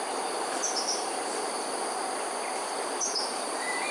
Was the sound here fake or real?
real